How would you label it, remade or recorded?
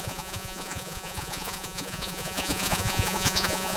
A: remade